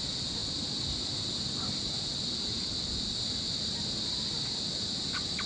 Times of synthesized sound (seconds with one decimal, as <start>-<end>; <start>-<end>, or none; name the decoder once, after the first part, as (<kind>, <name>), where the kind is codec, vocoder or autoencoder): none